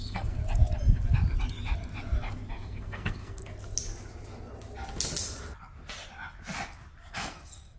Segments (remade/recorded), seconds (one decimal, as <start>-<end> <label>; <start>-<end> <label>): 0.0-0.4 remade; 0.4-2.5 recorded; 2.5-3.5 remade; 3.5-7.1 recorded; 7.1-7.8 remade